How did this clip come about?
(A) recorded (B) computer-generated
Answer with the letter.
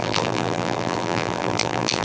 B